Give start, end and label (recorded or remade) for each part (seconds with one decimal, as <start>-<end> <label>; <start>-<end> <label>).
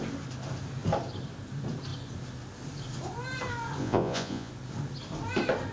0.0-3.8 recorded; 3.8-4.5 remade; 4.5-5.7 recorded